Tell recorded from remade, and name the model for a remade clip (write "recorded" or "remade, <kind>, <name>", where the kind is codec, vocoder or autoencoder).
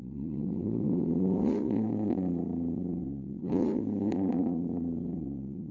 remade, vocoder, Vocos